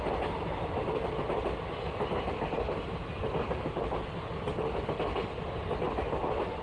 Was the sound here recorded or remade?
recorded